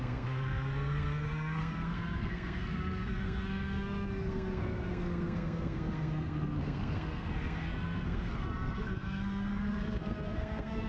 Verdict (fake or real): fake